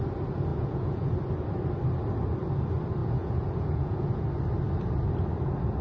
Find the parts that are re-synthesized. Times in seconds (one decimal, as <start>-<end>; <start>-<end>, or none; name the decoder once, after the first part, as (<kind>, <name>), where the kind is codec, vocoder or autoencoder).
0.5-1.1 (vocoder, Vocos); 3.0-4.2

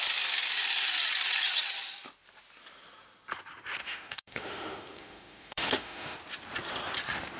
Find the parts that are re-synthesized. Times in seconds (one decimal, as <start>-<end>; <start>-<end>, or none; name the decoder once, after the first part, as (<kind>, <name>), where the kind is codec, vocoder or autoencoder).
3.8-6.2 (autoencoder, DAC-VAE)

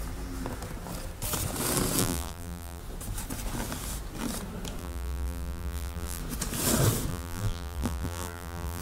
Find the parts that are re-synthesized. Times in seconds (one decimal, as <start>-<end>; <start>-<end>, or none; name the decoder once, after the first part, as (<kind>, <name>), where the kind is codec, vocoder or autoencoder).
2.0-2.8 (vocoder, BigVGAN v2); 4.8-6.2; 7.1-8.8

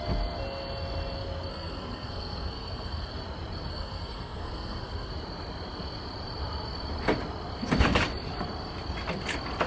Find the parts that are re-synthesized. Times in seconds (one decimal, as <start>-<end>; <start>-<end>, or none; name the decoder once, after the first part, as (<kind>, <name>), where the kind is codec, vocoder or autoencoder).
1.5-3.1 (codec, SNAC); 3.7-5.1